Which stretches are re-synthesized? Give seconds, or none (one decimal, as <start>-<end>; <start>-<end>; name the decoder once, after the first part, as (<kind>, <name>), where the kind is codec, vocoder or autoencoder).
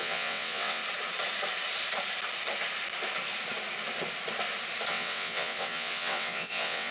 0.0-0.8 (vocoder, WaveNeXt); 4.9-6.9